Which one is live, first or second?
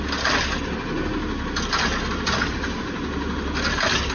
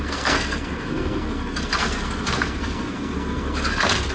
first